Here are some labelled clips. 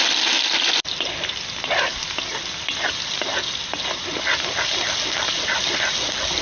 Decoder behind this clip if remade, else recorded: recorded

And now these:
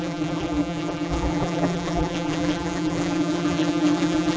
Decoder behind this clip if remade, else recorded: remade, vocoder, BigVGAN v2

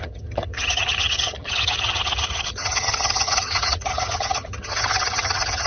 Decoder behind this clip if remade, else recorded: remade, vocoder, HiFi-GAN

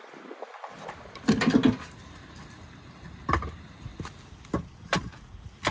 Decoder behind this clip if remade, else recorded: recorded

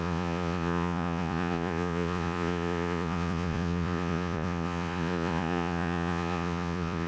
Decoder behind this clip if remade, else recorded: remade, vocoder, Vocos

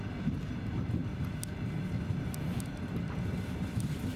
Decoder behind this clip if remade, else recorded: recorded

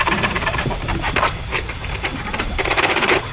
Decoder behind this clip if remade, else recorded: remade, vocoder, BigVGAN v2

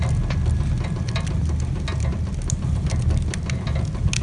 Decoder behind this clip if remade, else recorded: recorded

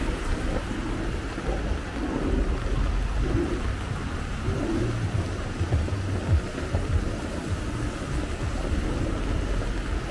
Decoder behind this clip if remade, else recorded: recorded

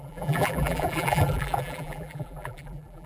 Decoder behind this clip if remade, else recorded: remade, vocoder, BigVGAN v2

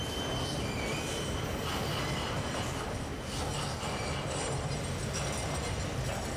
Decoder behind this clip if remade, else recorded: recorded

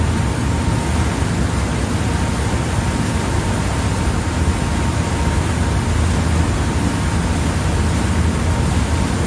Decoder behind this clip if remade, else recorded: recorded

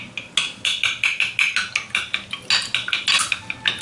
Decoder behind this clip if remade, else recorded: recorded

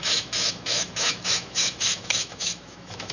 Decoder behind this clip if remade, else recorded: remade, autoencoder, DAC-VAE